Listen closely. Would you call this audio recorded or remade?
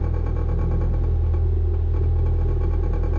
recorded